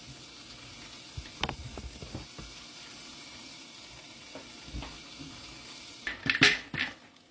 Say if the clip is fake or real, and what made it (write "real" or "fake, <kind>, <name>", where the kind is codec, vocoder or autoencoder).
real